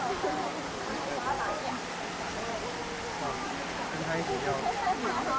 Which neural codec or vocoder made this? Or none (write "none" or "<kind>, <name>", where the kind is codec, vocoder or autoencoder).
none